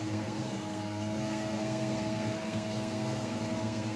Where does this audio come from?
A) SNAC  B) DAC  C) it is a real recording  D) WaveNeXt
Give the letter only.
A